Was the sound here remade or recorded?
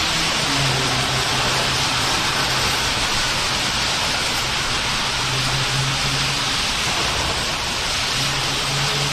recorded